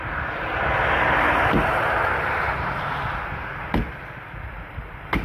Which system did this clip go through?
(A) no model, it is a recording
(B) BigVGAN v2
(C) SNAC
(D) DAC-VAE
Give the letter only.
A